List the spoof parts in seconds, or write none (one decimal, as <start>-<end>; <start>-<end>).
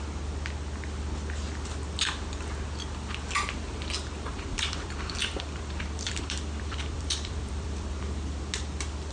4.3-8.4